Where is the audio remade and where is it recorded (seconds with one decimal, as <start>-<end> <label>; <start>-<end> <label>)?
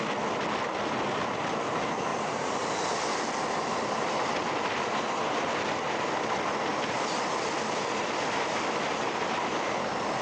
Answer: 0.0-2.1 recorded; 2.1-2.9 remade; 2.9-6.7 recorded; 6.7-7.3 remade; 7.3-10.2 recorded